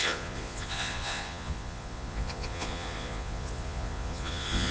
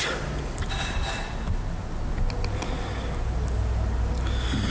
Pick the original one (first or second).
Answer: second